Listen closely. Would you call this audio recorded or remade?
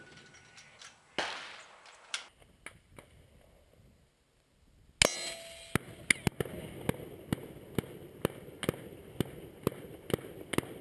recorded